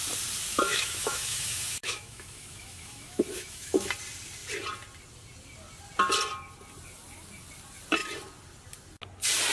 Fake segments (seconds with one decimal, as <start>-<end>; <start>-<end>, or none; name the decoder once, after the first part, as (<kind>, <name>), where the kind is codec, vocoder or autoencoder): 0.5-3.9 (autoencoder, DAC-VAE)